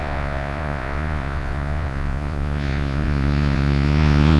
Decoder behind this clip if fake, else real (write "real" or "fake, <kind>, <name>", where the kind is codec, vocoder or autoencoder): fake, vocoder, Vocos